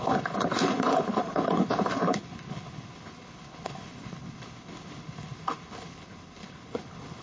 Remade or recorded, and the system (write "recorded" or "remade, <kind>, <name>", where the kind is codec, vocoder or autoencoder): remade, codec, HILCodec